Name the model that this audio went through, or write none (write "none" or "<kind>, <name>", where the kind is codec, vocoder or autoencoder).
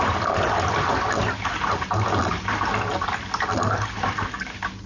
none